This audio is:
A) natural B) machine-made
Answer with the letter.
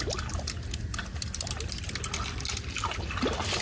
A